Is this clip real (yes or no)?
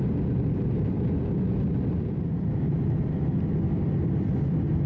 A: yes